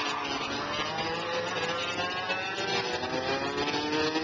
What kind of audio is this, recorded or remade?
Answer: recorded